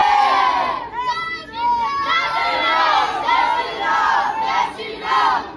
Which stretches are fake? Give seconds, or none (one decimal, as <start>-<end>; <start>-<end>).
none